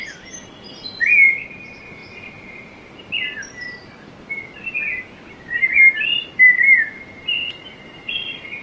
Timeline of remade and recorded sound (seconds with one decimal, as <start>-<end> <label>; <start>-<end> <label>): 0.0-8.6 recorded